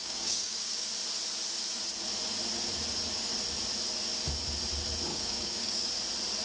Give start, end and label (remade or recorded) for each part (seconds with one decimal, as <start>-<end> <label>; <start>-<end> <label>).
0.0-0.9 remade; 0.9-5.1 recorded; 5.1-5.9 remade; 5.9-6.4 recorded

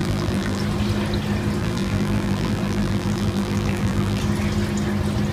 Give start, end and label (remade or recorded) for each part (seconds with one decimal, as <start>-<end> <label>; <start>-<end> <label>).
0.0-0.6 remade; 0.6-1.6 recorded; 1.6-4.2 remade; 4.2-5.3 recorded